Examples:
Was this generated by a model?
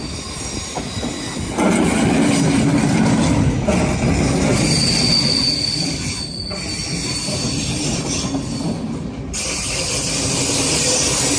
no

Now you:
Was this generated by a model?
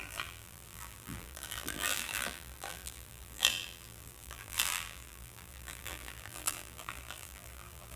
yes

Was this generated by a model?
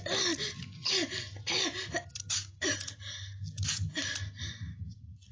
no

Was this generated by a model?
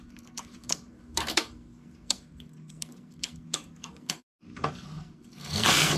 yes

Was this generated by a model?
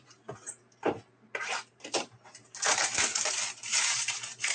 yes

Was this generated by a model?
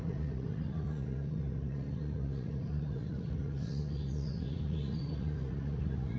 yes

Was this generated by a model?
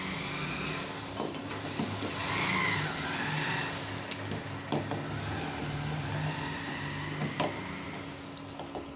no